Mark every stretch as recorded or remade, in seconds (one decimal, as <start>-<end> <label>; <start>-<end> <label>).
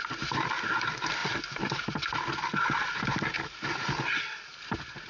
0.0-5.1 recorded